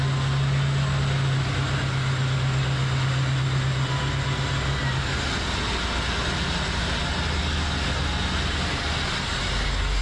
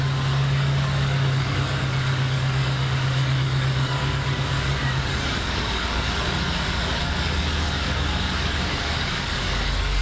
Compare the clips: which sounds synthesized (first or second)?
second